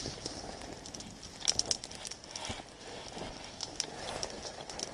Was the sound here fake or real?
real